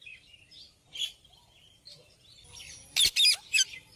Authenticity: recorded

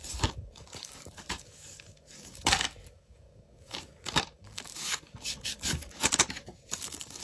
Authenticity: remade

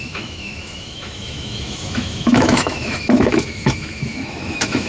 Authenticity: remade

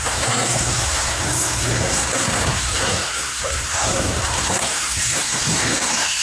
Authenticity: remade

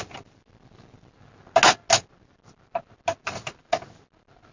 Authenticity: recorded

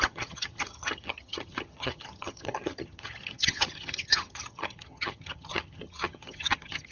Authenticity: remade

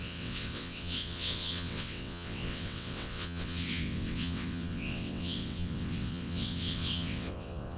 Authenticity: remade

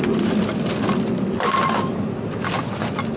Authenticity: recorded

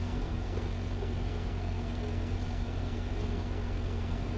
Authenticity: remade